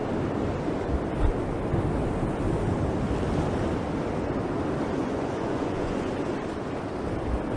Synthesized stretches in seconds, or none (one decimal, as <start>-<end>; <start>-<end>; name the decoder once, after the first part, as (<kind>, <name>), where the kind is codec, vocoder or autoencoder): 5.0-6.1 (vocoder, Vocos)